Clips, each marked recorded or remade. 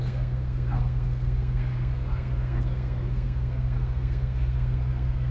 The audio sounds remade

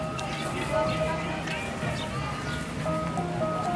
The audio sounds recorded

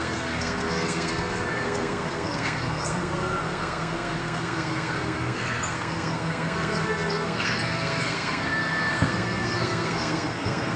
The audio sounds remade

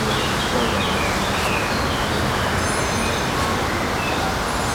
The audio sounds recorded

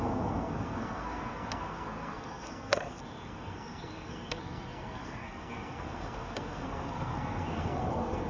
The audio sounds remade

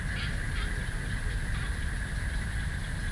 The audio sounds recorded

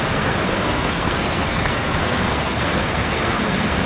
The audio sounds remade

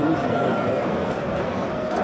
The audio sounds remade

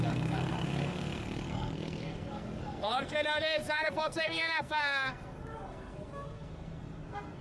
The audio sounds remade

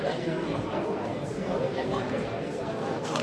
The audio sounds remade